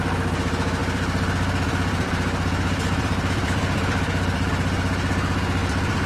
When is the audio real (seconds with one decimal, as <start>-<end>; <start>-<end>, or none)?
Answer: 0.0-0.8; 4.5-5.6